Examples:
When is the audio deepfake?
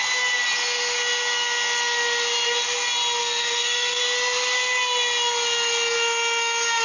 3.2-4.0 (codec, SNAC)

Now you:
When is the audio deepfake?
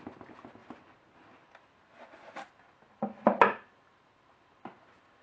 none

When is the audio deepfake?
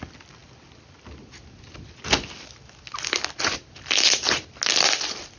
none